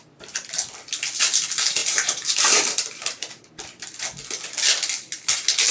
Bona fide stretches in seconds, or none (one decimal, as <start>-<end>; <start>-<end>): 0.0-1.8; 3.3-5.7